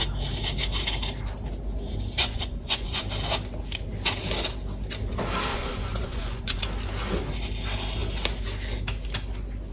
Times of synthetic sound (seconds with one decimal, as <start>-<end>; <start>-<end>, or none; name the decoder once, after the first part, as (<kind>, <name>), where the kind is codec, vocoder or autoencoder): 2.2-3.0 (vocoder, Vocos); 5.5-6.6